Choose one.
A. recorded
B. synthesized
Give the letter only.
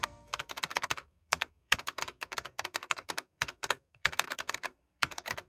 B